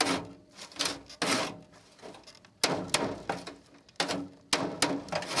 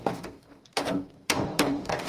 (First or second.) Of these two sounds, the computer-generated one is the second